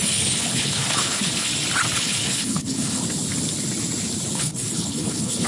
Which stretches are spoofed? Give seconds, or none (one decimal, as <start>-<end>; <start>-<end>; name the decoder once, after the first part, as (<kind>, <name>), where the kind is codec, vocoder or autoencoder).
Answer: 0.0-1.5 (codec, HILCodec); 2.0-3.0; 4.3-5.5